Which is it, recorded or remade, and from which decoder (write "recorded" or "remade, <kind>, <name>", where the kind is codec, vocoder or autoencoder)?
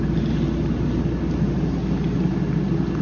recorded